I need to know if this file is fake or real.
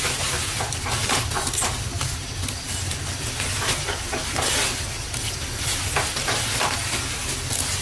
real